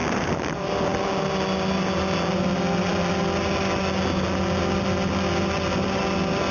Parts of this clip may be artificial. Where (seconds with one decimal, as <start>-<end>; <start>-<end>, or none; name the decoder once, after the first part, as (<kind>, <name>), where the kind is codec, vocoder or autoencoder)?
0.0-0.5 (vocoder, BigVGAN v2)